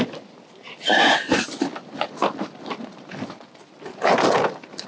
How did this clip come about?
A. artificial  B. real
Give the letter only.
B